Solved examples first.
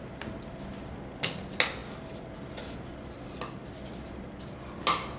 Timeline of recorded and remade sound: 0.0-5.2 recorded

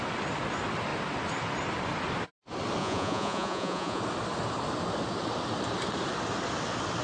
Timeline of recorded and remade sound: 0.0-2.8 recorded; 2.8-4.0 remade; 4.0-7.0 recorded